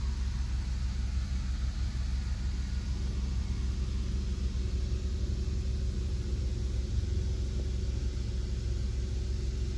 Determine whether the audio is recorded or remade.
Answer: recorded